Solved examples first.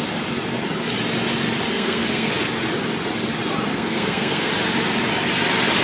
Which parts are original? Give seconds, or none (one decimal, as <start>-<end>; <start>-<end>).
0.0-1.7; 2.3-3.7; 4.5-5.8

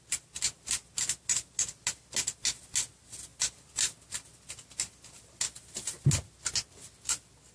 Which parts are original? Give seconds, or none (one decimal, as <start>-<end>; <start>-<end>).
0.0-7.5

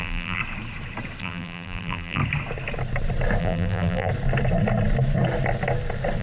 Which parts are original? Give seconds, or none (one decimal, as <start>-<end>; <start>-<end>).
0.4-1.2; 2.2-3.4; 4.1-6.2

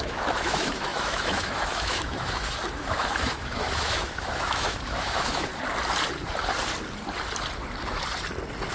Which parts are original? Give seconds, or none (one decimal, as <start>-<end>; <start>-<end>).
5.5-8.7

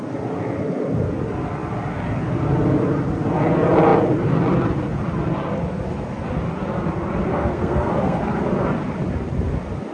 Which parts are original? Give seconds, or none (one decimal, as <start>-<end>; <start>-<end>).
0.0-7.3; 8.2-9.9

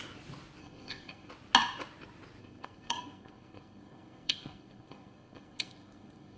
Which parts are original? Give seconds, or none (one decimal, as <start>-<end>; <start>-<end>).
0.0-0.6; 1.3-2.4

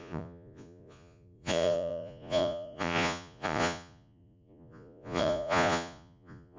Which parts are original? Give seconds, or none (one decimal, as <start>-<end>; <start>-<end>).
none

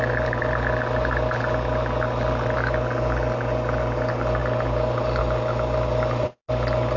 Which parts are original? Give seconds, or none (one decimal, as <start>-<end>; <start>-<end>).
0.0-7.0